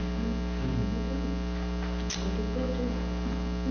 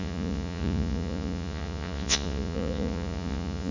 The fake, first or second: second